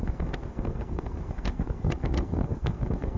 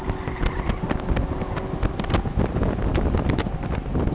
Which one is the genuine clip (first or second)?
second